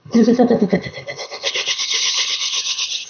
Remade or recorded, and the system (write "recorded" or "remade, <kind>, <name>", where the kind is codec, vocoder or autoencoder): remade, codec, HILCodec